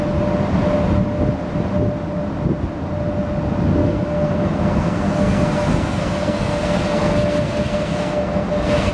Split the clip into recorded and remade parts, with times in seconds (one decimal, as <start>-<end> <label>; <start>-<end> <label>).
0.0-3.8 recorded; 3.8-8.9 remade